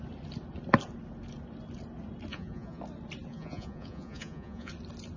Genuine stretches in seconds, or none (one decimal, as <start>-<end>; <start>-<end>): 0.0-2.3; 2.8-3.3; 4.7-5.2